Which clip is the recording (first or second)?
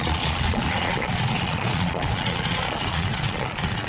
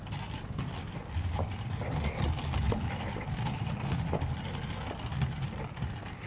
second